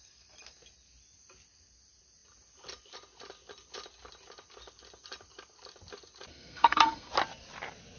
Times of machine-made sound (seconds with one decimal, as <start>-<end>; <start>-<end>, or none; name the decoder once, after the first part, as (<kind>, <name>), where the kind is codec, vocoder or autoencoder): 6.3-7.1 (codec, SNAC)